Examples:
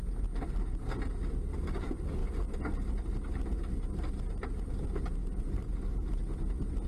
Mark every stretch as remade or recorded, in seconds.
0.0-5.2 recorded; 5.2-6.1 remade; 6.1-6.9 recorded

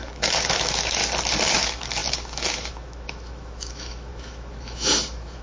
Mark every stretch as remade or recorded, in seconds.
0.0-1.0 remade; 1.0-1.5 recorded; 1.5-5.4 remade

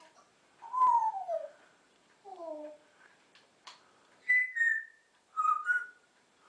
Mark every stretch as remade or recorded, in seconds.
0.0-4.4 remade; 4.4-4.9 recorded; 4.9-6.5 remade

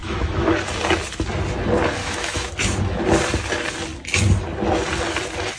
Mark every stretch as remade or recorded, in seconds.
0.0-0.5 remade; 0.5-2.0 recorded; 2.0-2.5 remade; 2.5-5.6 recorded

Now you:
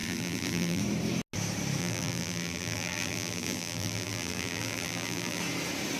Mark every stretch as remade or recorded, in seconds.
0.0-0.8 remade; 0.8-1.8 recorded; 1.8-5.4 remade; 5.4-6.0 recorded

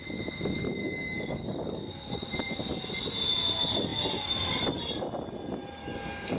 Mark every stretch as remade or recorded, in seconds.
0.0-0.8 recorded; 0.8-2.1 remade; 2.1-5.8 recorded; 5.8-6.4 remade

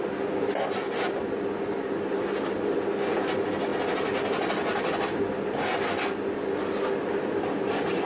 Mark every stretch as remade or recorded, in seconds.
0.0-8.1 recorded

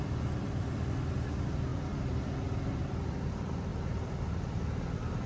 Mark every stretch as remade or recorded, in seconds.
0.0-3.7 remade; 3.7-5.3 recorded